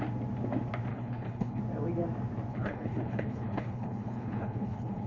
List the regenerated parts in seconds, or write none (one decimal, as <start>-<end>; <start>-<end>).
0.9-1.6; 2.5-5.1